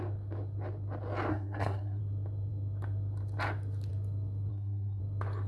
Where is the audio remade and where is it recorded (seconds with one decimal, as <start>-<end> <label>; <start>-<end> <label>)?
0.0-1.3 recorded; 1.3-2.0 remade; 2.0-4.5 recorded; 4.5-5.0 remade; 5.0-5.5 recorded